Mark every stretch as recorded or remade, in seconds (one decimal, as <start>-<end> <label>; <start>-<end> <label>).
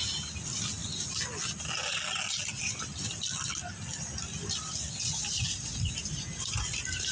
0.0-7.1 recorded